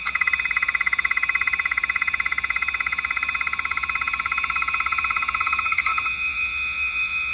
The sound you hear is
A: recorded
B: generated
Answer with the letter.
B